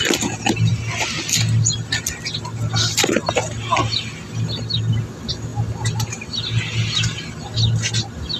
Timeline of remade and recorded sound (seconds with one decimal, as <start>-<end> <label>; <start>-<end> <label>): 0.0-8.4 recorded